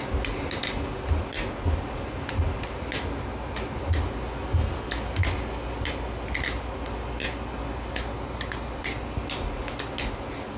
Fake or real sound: real